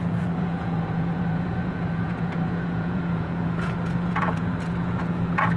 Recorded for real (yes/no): no